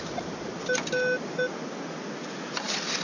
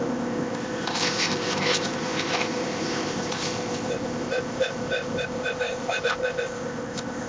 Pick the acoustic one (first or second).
first